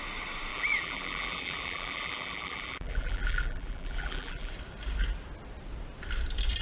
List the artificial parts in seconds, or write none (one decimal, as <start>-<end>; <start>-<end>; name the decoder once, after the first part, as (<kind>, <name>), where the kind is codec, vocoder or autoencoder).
0.5-4.5 (vocoder, BigVGAN v2)